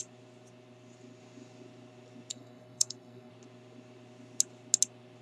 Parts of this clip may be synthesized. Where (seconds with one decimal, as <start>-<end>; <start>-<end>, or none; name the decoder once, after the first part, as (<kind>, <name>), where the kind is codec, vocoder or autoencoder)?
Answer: 2.3-3.3 (codec, SNAC)